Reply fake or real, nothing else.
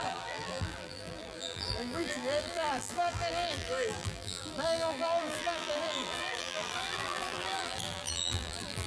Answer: fake